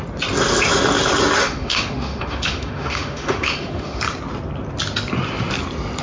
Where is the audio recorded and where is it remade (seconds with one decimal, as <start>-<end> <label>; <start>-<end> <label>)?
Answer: 0.0-1.4 recorded; 1.4-4.0 remade; 4.0-6.0 recorded